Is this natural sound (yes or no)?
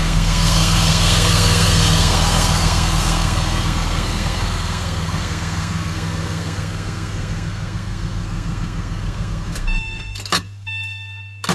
no